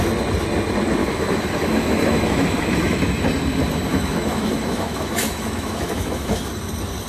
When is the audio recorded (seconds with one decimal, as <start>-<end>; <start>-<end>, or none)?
0.0-1.0; 3.0-3.9; 6.5-7.1